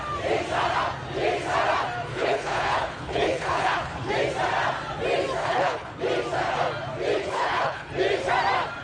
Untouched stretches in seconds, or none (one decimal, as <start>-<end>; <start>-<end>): 0.0-2.1; 4.1-5.4; 6.0-7.2; 7.9-8.8